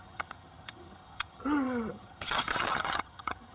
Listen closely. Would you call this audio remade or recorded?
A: remade